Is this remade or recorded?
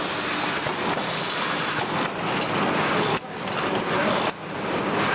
recorded